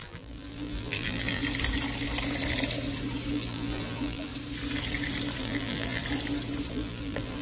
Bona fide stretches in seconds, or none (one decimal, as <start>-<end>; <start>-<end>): 1.4-3.3; 4.3-5.4; 6.0-6.7